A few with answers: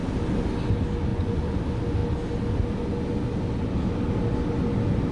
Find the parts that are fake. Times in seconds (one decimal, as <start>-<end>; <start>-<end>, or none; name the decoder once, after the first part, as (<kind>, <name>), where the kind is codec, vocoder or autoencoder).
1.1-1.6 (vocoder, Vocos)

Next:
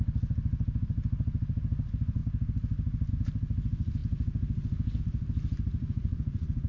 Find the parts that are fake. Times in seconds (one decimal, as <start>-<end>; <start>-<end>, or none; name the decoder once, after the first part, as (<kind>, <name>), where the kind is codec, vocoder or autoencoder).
5.8-6.7 (vocoder, Vocos)

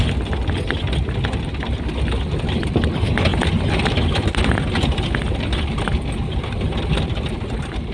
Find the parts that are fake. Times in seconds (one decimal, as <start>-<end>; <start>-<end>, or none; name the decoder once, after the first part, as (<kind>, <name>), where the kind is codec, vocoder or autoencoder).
none

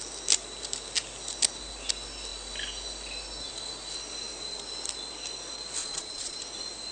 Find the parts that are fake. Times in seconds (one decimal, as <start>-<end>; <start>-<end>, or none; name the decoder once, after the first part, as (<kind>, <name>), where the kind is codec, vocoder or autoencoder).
5.8-6.4 (vocoder, Vocos)

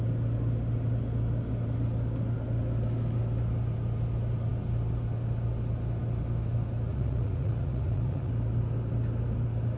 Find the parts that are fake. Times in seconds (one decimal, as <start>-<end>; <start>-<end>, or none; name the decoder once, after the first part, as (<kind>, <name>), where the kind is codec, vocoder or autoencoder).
6.9-8.3 (vocoder, Vocos)

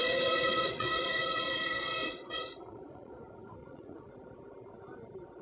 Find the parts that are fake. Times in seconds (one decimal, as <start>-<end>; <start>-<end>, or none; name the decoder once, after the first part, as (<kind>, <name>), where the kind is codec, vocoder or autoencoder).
0.0-3.2 (vocoder, Vocos); 3.6-4.1

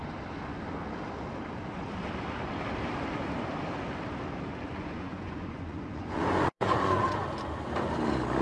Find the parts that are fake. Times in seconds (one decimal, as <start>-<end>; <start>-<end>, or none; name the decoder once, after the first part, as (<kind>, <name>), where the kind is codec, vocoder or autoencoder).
4.7-7.2 (vocoder, Vocos)